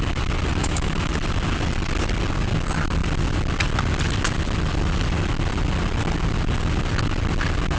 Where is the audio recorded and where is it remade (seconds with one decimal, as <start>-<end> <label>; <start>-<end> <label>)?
0.0-0.6 recorded; 0.6-1.1 remade; 1.1-7.8 recorded

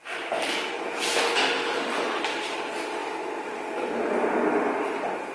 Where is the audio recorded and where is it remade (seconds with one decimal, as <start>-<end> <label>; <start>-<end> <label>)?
0.0-3.0 recorded; 3.0-3.9 remade; 3.9-5.3 recorded

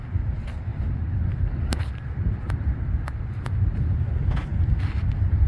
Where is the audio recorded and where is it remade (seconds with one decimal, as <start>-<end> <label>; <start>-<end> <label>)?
0.0-0.7 recorded; 0.7-4.0 remade; 4.0-5.5 recorded

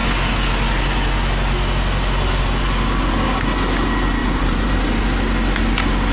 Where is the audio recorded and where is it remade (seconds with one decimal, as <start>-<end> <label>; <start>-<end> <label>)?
0.0-4.2 recorded; 4.2-5.0 remade; 5.0-6.1 recorded